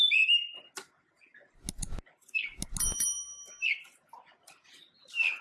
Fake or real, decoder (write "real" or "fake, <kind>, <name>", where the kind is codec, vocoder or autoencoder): real